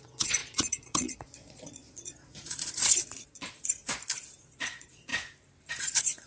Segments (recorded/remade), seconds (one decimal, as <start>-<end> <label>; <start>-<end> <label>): 0.0-3.8 remade; 3.8-4.4 recorded; 4.4-5.1 remade; 5.1-5.8 recorded; 5.8-6.3 remade